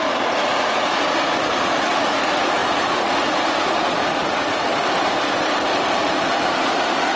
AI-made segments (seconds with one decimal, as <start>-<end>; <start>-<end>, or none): 0.0-4.7; 5.8-7.2